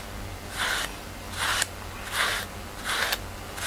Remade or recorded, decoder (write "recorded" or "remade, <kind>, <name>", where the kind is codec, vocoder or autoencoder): recorded